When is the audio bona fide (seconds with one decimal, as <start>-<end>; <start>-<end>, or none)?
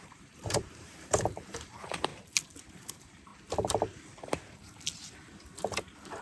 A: 2.1-2.7; 3.3-5.8